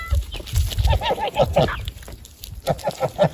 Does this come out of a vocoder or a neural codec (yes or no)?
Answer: no